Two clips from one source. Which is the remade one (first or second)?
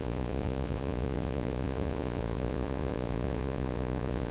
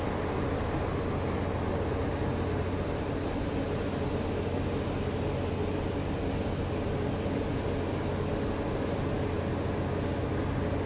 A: first